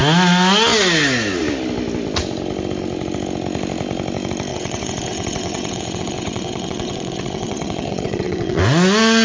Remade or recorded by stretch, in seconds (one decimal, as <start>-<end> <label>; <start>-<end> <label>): 0.0-4.5 recorded; 4.5-8.6 remade; 8.6-9.2 recorded